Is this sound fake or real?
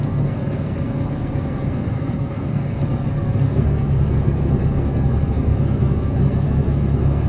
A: fake